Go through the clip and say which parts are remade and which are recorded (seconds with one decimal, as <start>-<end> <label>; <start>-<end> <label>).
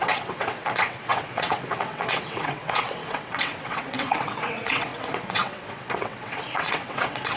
0.0-7.4 remade